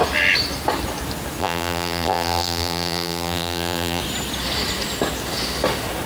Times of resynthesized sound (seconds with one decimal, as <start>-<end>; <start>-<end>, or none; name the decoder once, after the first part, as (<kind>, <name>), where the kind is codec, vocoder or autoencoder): 1.4-4.0 (vocoder, BigVGAN v2)